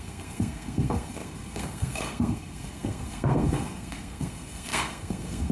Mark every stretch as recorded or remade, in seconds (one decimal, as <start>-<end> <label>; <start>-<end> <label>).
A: 0.0-5.5 remade